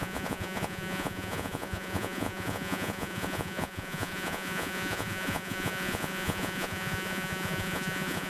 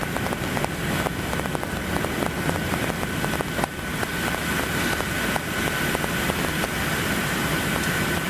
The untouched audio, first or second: second